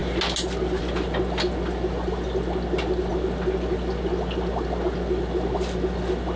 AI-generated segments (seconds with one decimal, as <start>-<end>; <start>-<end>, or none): none